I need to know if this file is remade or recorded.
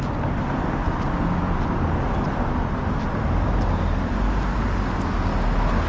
recorded